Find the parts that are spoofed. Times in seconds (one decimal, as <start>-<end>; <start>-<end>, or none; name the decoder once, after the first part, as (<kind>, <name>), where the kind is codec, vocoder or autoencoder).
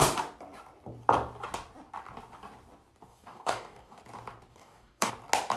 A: 3.1-4.0 (codec, DAC); 4.5-5.1